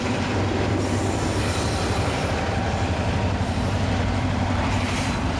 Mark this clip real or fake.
fake